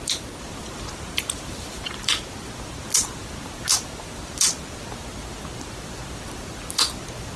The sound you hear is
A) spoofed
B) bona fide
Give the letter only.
A